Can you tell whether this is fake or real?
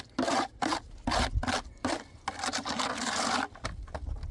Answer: real